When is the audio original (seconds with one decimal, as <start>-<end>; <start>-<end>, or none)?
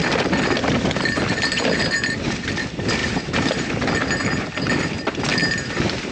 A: 0.0-3.0; 3.7-5.3